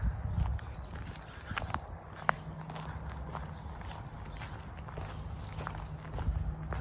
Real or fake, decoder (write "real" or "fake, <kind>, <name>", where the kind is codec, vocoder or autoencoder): real